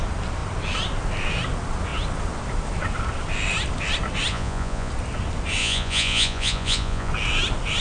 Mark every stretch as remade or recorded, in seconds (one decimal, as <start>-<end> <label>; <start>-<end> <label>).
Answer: 0.0-4.3 recorded; 4.3-4.9 remade; 4.9-5.6 recorded; 5.6-7.1 remade; 7.1-7.8 recorded